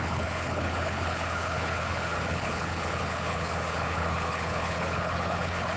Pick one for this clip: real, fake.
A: fake